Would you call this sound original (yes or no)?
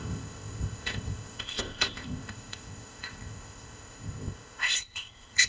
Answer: no